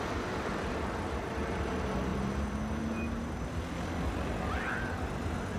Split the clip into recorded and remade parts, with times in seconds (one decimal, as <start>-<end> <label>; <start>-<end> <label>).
0.0-5.6 recorded